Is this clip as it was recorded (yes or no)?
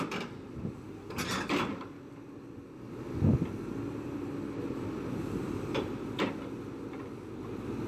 yes